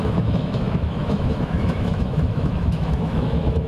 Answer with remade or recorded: remade